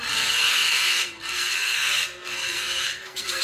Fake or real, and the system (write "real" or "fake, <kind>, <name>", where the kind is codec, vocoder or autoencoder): fake, codec, SNAC